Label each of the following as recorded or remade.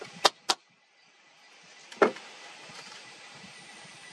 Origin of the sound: recorded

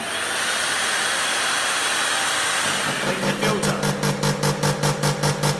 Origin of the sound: recorded